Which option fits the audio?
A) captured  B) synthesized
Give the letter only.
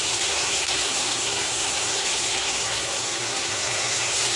B